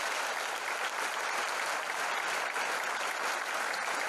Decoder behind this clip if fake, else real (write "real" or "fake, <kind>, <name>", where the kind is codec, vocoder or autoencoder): real